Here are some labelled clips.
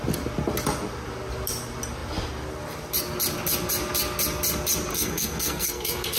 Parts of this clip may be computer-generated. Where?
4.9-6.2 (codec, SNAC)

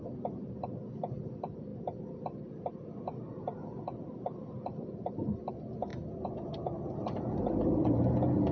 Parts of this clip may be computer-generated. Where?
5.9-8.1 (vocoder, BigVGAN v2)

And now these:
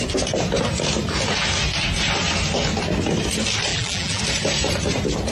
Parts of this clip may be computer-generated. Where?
3.7-4.2 (vocoder, BigVGAN v2)

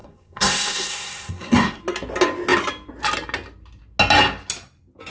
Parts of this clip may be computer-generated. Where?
0.0-1.8 (codec, SNAC)